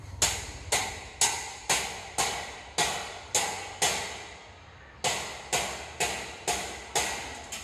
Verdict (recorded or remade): recorded